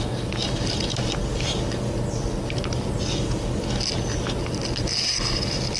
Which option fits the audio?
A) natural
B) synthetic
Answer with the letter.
A